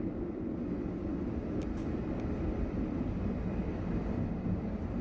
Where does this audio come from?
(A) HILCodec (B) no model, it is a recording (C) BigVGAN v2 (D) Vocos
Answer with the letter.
C